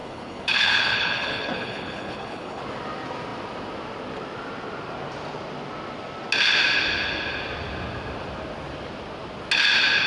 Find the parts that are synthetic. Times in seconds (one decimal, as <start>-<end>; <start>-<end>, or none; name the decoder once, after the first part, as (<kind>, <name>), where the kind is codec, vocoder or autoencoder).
0.0-2.6 (codec, HILCodec)